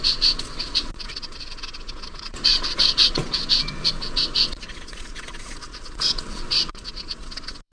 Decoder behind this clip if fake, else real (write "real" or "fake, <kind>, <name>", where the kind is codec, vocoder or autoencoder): fake, vocoder, Vocos